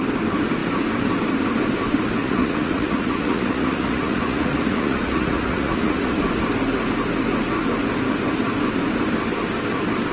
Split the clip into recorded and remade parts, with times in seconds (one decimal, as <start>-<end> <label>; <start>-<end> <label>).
0.0-2.2 recorded; 2.2-6.2 remade; 6.2-10.1 recorded